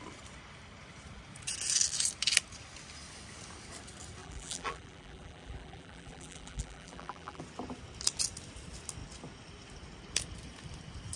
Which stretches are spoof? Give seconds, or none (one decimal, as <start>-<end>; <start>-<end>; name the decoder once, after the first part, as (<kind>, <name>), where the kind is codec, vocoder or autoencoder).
4.2-7.4 (vocoder, BigVGAN v2)